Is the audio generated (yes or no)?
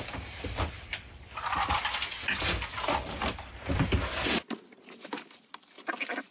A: no